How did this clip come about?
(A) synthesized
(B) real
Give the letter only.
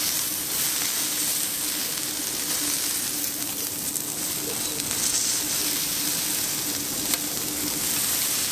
A